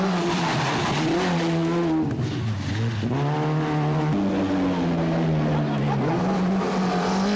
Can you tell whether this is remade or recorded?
recorded